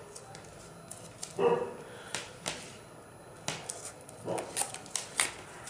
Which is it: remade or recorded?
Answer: recorded